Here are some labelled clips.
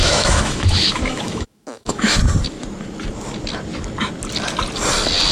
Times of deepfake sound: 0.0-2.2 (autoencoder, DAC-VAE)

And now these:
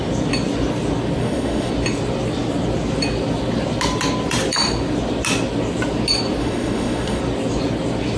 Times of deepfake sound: 1.2-1.7 (autoencoder, DAC-VAE); 6.4-7.2

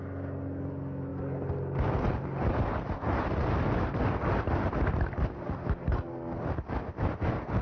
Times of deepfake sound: none

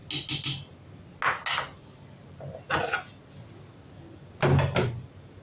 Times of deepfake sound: none